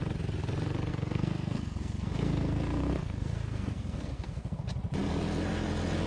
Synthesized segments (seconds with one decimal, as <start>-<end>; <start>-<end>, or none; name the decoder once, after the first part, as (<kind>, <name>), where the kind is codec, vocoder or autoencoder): 0.9-4.6 (codec, SNAC)